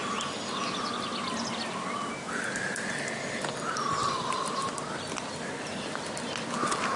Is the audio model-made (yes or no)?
yes